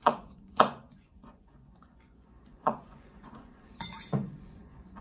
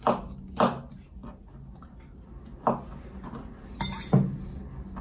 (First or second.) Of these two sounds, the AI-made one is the first